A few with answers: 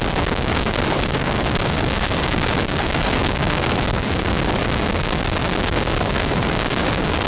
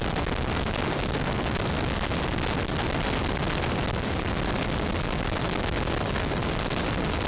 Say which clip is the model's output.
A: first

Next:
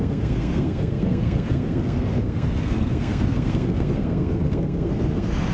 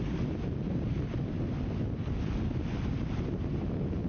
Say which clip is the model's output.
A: first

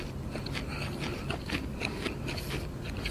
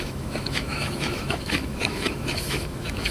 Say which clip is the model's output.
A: second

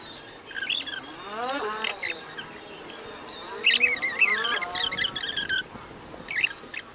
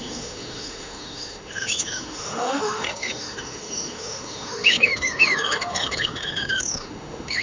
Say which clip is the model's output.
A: second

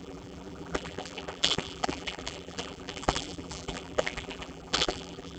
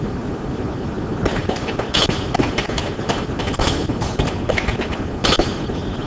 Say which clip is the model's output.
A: first